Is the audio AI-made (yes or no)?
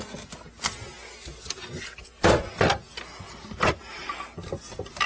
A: no